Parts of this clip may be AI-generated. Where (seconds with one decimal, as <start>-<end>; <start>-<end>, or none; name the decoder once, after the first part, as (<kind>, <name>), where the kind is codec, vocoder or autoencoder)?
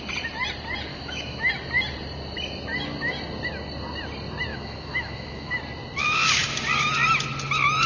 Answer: 0.9-1.5 (autoencoder, DAC-VAE); 4.5-5.6